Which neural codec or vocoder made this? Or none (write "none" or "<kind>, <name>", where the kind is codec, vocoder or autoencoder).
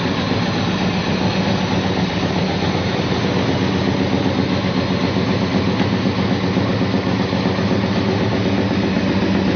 none